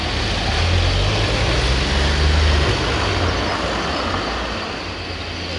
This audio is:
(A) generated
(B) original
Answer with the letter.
B